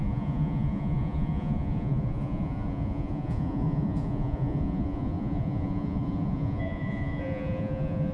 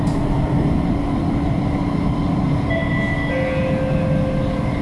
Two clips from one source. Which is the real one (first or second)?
second